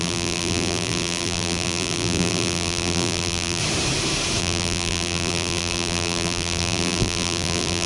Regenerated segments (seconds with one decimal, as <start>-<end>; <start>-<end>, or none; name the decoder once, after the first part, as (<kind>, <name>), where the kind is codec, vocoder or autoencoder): 0.0-3.6 (vocoder, BigVGAN v2); 4.4-7.9